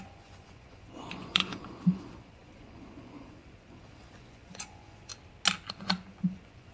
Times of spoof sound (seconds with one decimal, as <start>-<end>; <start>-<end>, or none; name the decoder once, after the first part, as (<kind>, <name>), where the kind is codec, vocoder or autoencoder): 0.0-5.1 (vocoder, Vocos); 5.7-6.7